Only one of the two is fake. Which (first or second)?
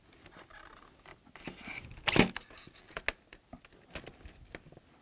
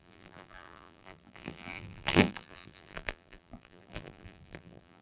second